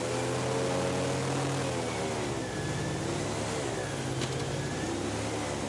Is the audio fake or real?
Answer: real